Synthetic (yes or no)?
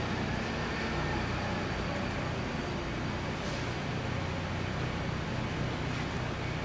no